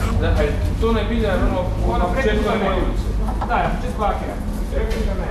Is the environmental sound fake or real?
real